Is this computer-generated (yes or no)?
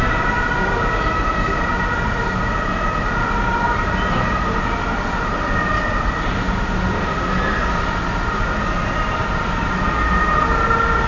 no